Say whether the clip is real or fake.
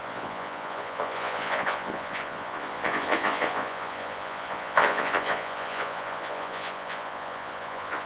fake